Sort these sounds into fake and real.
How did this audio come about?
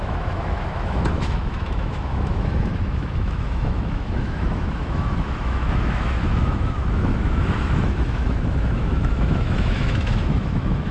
fake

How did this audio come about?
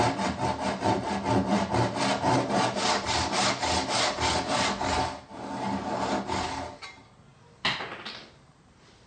real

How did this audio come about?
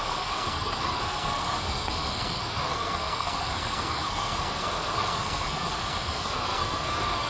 fake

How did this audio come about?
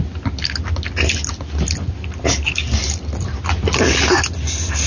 real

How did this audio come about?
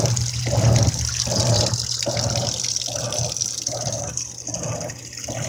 fake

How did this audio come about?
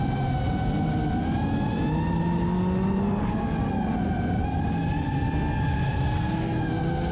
real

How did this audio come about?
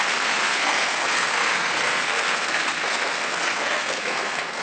fake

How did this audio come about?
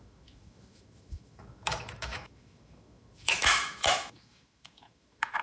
fake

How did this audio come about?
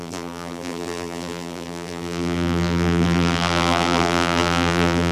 fake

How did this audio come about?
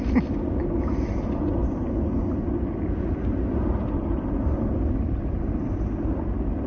real